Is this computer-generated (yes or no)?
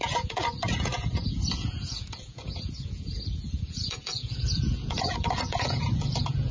yes